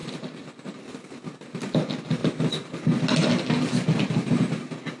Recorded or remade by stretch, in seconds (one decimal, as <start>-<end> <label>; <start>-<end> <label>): 0.0-5.0 recorded